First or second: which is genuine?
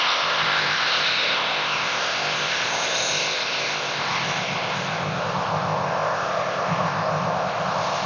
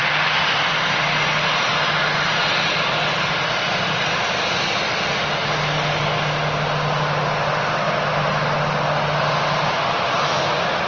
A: second